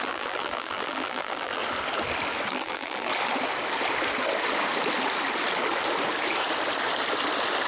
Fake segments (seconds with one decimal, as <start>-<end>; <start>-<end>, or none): 0.0-1.6; 2.5-3.1